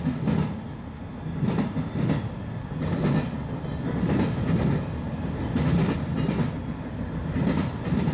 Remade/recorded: recorded